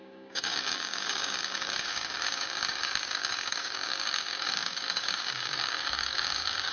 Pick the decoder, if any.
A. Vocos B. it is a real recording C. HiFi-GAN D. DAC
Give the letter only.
D